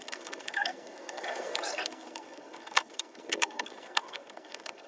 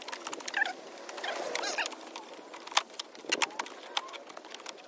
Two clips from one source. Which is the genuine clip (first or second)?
second